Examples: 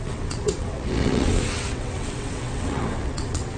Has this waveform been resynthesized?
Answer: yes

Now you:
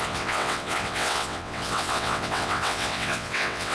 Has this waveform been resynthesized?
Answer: yes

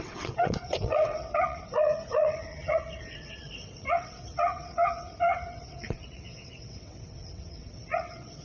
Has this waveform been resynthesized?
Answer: yes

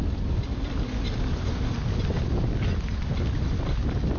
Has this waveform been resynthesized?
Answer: no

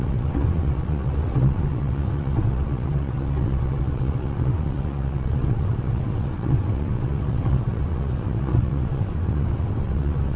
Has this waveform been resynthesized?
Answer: yes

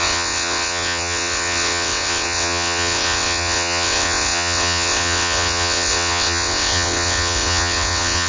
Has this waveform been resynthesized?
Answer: yes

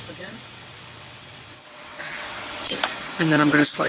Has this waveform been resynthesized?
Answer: yes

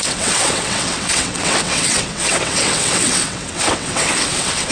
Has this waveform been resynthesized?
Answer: yes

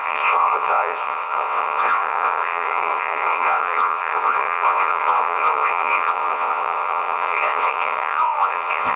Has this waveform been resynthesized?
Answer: yes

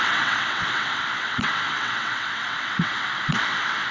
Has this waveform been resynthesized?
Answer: yes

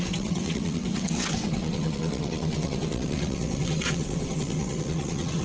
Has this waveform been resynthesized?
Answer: yes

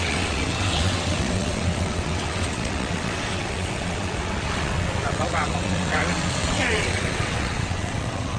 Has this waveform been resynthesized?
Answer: yes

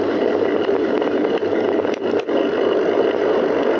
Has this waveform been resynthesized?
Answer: no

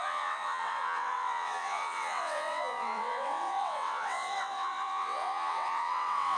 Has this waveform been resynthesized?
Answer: yes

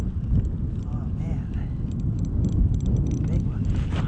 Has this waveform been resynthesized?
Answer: no